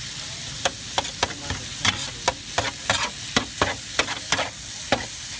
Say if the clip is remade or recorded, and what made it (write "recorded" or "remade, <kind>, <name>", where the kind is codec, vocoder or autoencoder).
recorded